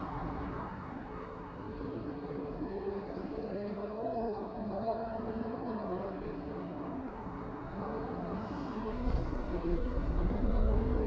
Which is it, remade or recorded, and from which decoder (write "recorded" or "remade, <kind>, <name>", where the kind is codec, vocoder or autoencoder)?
remade, codec, SNAC